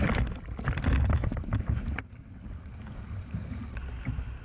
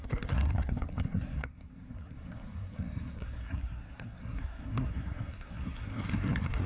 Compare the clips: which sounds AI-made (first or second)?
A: second